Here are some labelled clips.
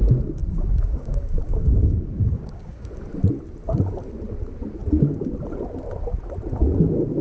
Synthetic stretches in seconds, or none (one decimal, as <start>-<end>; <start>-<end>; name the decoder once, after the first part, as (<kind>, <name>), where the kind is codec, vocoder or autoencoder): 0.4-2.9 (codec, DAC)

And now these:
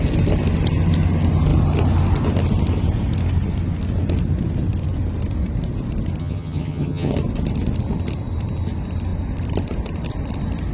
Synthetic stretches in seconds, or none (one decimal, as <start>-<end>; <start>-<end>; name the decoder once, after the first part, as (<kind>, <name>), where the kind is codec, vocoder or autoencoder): 6.2-7.1 (vocoder, HiFi-GAN)

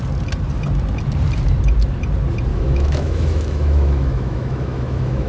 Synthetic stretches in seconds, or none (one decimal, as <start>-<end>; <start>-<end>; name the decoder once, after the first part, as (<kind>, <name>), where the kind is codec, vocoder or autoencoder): 2.5-5.3 (autoencoder, DAC-VAE)

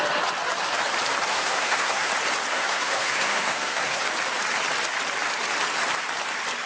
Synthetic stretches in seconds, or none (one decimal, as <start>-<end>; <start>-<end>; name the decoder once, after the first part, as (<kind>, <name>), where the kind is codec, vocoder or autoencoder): 1.3-2.1 (codec, SNAC); 2.5-4.0